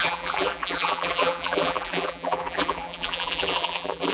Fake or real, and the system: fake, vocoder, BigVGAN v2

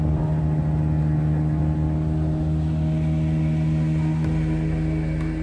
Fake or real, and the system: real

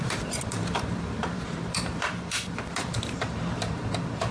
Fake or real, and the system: fake, vocoder, BigVGAN v2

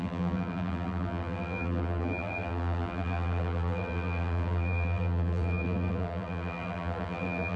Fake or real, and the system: fake, vocoder, BigVGAN v2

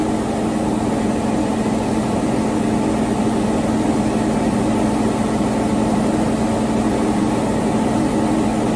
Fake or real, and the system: real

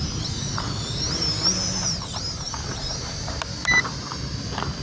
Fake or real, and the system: fake, vocoder, BigVGAN v2